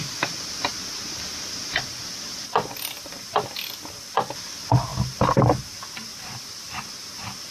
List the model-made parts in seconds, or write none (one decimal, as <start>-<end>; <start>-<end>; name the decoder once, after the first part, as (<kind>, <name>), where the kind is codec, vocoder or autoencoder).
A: none